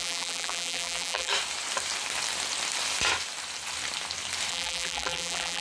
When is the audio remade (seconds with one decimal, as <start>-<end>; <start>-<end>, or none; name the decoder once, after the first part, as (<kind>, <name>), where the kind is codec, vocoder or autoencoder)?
0.0-1.3 (vocoder, BigVGAN v2); 4.5-5.6